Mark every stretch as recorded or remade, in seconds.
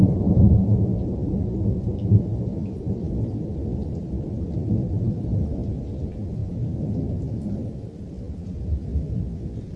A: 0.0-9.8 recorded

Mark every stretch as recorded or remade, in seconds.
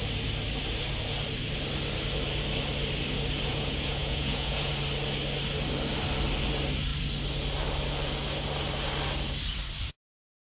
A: 0.0-3.5 recorded; 3.5-4.7 remade; 4.7-10.5 recorded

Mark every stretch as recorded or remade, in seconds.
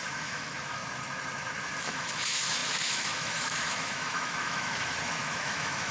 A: 0.0-0.8 remade; 0.8-1.8 recorded; 1.8-5.9 remade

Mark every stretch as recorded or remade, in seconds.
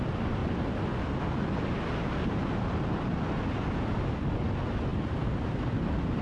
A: 0.0-0.4 remade; 0.4-4.1 recorded; 4.1-6.2 remade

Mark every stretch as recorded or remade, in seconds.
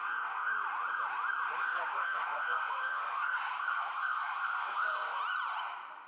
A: 0.0-0.5 remade; 0.5-1.6 recorded; 1.6-5.2 remade; 5.2-6.1 recorded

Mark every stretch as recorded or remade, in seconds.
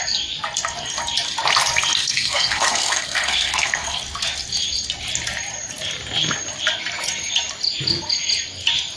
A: 0.0-2.0 recorded; 2.0-4.0 remade; 4.0-9.0 recorded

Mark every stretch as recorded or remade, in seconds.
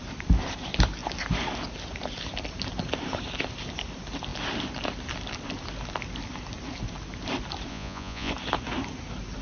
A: 0.0-7.7 recorded; 7.7-8.3 remade; 8.3-9.4 recorded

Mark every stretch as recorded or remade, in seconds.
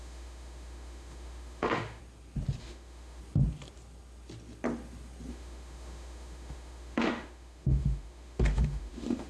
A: 0.0-2.0 remade; 2.0-2.6 recorded; 2.6-3.2 remade; 3.2-5.3 recorded; 5.3-9.3 remade